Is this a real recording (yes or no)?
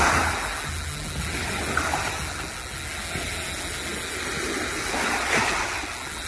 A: yes